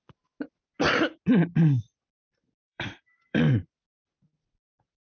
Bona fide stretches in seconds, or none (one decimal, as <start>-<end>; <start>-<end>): 0.0-1.9